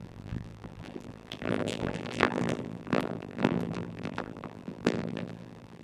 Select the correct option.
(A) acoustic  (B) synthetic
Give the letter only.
B